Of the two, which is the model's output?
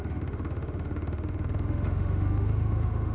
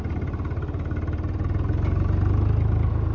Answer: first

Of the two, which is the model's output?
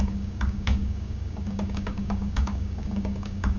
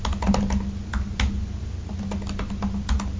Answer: first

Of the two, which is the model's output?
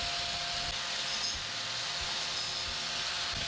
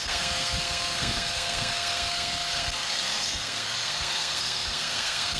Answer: second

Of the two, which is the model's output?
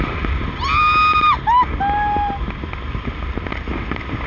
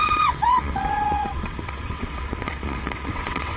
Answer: second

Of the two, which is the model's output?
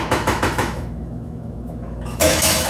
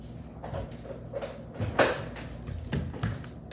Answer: first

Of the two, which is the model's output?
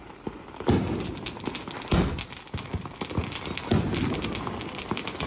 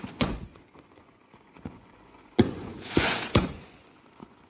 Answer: second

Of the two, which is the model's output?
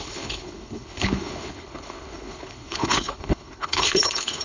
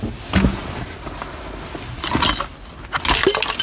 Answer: first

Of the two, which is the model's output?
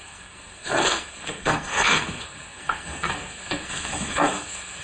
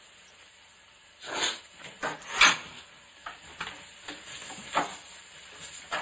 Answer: first